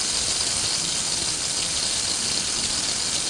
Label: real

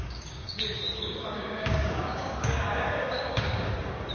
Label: fake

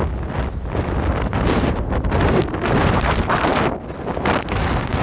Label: real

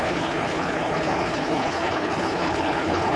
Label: fake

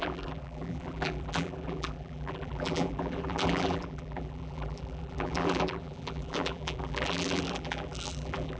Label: fake